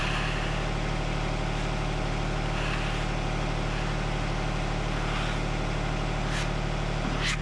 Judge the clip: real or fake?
real